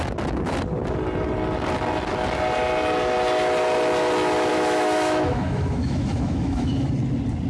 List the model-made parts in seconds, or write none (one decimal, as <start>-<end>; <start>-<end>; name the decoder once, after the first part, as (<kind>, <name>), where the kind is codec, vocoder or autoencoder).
4.5-6.9 (autoencoder, DAC-VAE)